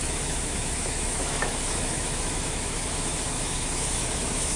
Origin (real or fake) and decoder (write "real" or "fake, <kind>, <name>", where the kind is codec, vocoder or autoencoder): fake, autoencoder, DAC-VAE